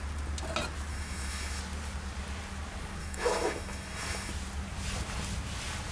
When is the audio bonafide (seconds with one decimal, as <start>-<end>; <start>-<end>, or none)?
0.0-0.9; 1.6-3.0; 4.3-5.9